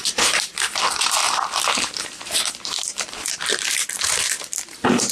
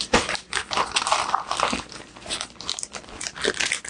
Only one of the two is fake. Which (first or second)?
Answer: first